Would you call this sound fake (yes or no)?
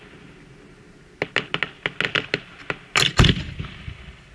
no